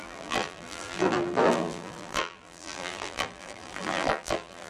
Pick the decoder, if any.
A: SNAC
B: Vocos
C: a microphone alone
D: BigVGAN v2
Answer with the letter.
D